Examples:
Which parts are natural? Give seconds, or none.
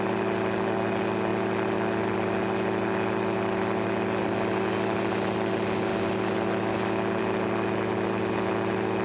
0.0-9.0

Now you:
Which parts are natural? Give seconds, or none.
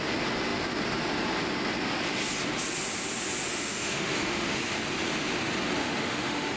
0.0-3.5; 4.6-5.8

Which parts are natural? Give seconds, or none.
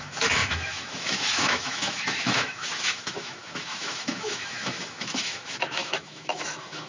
none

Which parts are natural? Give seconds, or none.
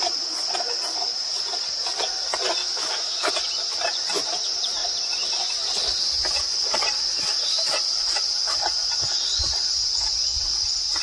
0.0-2.6; 3.3-11.0